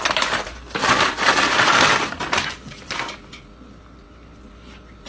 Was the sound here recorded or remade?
recorded